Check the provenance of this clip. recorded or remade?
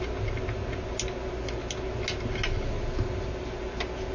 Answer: recorded